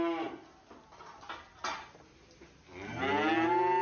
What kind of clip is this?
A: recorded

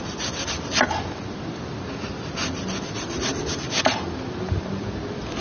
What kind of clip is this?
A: recorded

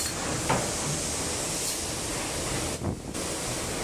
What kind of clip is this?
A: recorded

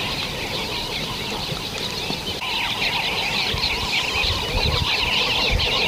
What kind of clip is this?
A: recorded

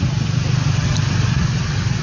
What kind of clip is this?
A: recorded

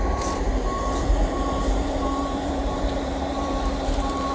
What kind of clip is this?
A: remade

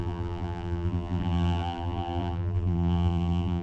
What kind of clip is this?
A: remade